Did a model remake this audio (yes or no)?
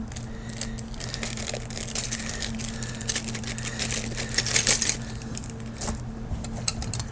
no